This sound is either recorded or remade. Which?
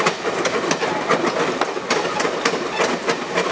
recorded